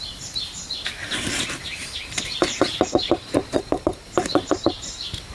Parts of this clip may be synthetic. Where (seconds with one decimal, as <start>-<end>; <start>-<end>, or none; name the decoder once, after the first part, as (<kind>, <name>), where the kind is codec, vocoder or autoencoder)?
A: 1.8-5.3 (vocoder, BigVGAN v2)

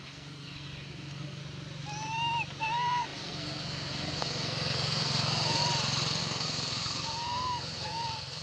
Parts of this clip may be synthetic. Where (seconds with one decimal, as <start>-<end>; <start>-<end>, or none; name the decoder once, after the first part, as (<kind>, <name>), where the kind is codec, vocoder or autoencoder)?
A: 0.0-1.4 (codec, SNAC); 2.6-5.6; 6.2-8.4